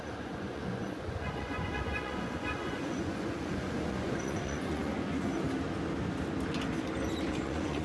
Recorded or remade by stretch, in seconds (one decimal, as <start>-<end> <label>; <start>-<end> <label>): 0.0-5.3 remade; 5.3-7.3 recorded; 7.3-7.8 remade